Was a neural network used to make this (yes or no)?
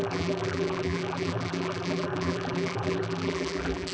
yes